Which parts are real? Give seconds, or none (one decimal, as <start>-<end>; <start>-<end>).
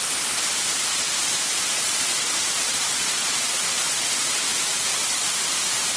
0.0-0.9; 4.4-6.0